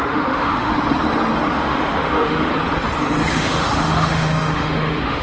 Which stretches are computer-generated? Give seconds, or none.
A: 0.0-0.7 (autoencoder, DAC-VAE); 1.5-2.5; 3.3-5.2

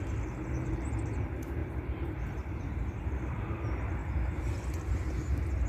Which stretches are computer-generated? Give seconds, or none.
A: 1.6-3.4 (vocoder, BigVGAN v2)

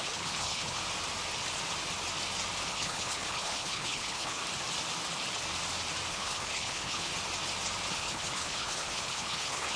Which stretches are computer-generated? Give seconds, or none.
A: 0.0-0.8 (codec, HILCodec); 2.7-4.4; 6.1-7.1; 7.9-9.8

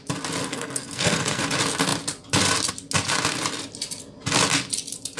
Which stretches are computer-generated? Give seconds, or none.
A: 0.4-1.4 (codec, SNAC)

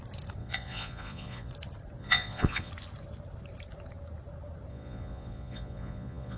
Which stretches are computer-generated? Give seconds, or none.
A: 0.4-1.5 (vocoder, Vocos); 2.0-2.7; 4.7-6.4

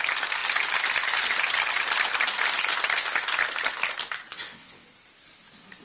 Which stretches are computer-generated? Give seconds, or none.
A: 4.3-4.9 (vocoder, WaveNeXt)